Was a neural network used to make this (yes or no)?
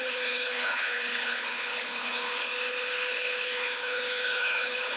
yes